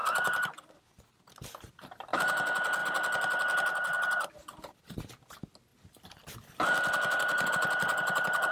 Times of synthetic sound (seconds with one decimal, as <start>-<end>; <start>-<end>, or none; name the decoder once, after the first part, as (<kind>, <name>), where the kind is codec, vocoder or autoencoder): 5.7-7.5 (vocoder, BigVGAN v2)